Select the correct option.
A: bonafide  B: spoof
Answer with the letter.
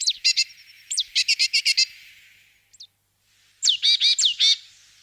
A